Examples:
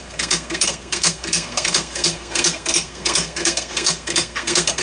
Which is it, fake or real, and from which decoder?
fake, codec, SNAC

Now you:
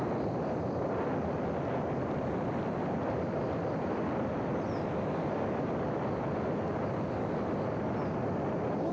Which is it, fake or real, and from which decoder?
real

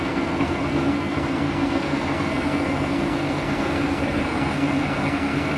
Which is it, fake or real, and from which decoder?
fake, codec, SNAC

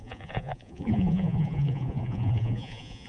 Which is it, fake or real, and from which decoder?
fake, vocoder, Vocos